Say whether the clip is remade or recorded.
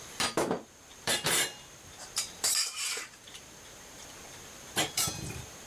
remade